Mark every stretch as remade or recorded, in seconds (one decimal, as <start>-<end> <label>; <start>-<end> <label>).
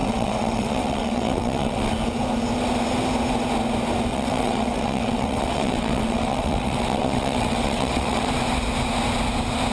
0.0-1.9 remade; 1.9-4.1 recorded; 4.1-8.3 remade; 8.3-9.7 recorded